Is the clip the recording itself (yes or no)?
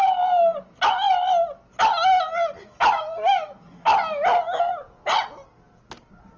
yes